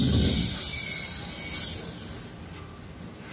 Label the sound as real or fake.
real